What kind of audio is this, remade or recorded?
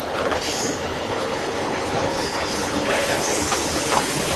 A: remade